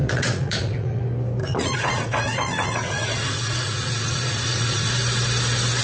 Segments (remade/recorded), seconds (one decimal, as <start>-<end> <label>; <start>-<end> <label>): 0.0-1.0 remade; 1.0-1.4 recorded; 1.4-4.9 remade; 4.9-5.8 recorded